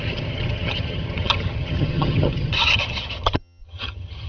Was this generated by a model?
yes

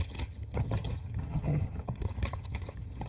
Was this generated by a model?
yes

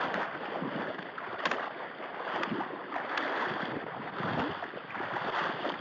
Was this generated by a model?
no